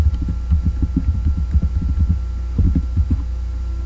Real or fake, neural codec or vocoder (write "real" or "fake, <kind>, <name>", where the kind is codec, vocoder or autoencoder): real